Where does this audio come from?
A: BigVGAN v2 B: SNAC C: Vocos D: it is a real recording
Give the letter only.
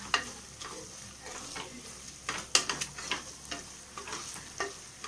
D